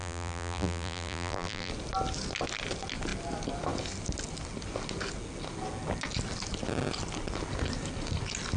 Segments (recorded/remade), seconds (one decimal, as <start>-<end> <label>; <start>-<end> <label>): 0.0-1.7 remade; 1.7-8.6 recorded